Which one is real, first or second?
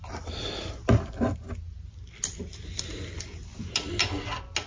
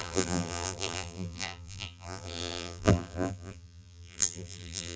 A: first